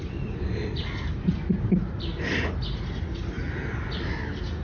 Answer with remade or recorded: recorded